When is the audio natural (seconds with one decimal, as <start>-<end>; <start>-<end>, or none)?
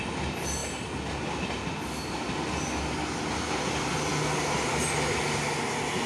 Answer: 0.0-6.1